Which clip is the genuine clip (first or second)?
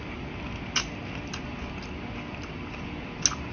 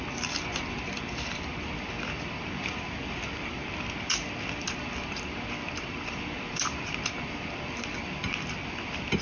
first